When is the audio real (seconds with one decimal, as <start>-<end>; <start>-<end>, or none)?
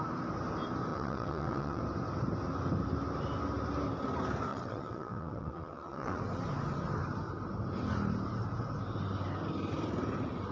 0.0-0.9; 1.8-4.5; 6.2-10.5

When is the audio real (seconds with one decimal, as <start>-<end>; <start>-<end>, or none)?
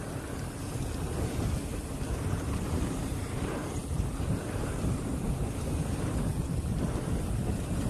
0.0-1.7; 5.1-7.9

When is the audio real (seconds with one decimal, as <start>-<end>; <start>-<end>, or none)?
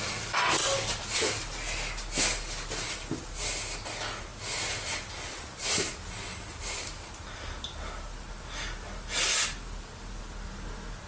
0.0-0.6; 2.2-6.3; 10.2-11.1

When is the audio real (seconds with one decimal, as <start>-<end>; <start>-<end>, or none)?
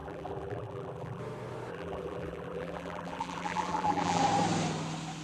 1.2-1.7; 4.2-5.2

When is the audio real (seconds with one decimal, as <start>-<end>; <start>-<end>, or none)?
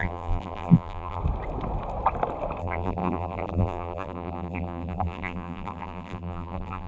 1.2-2.6